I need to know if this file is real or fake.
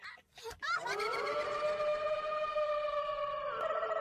fake